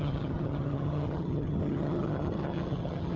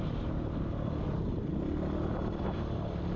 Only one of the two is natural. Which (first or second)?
second